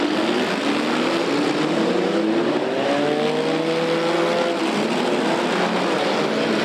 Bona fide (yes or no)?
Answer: yes